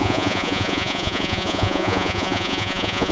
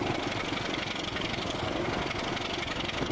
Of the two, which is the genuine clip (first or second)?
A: second